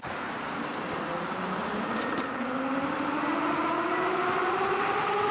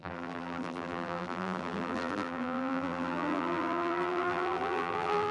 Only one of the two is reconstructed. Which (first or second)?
second